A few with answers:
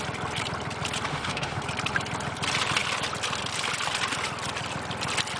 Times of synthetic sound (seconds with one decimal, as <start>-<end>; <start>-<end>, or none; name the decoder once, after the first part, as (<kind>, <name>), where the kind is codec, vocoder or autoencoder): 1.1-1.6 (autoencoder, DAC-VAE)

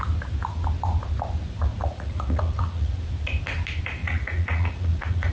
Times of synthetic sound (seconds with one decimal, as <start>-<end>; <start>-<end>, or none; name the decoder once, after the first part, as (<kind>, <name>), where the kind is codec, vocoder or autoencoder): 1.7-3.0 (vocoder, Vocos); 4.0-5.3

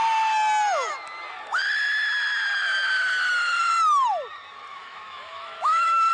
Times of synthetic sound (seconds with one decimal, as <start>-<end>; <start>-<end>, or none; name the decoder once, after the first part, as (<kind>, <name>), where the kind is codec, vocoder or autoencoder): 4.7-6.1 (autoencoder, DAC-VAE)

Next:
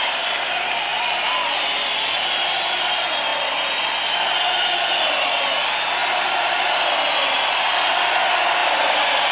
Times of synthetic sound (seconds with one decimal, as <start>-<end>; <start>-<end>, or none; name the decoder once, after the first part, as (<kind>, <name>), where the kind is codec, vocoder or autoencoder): 6.0-7.3 (vocoder, BigVGAN v2)

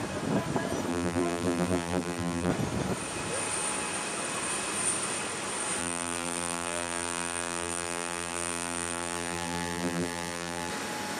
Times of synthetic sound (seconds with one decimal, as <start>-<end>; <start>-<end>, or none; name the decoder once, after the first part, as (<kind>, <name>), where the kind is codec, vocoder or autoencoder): 0.9-2.5 (vocoder, BigVGAN v2); 5.8-10.7

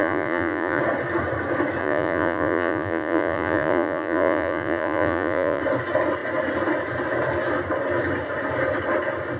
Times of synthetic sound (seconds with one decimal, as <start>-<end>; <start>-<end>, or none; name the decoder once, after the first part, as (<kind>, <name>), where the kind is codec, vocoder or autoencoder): 0.0-0.8 (vocoder, Vocos); 1.8-5.6